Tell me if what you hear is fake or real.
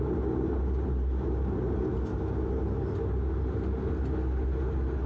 real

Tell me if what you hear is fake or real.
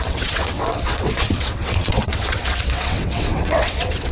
fake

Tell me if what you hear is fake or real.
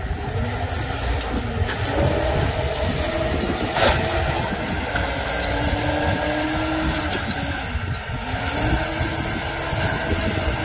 real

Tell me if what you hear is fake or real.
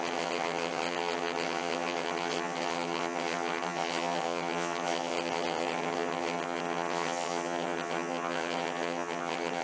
fake